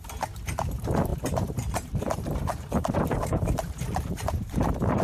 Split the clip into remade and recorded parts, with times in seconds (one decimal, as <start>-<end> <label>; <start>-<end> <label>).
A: 0.0-5.0 remade